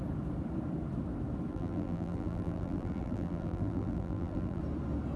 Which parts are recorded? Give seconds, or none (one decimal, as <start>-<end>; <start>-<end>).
0.0-1.5; 4.6-5.2